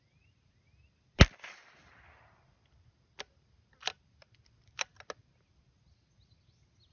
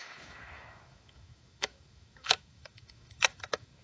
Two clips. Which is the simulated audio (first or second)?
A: second